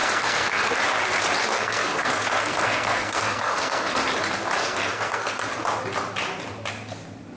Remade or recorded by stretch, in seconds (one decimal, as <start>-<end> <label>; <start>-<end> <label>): 0.0-0.8 remade; 0.8-1.5 recorded; 1.5-3.9 remade; 3.9-4.6 recorded; 4.6-5.5 remade; 5.5-7.4 recorded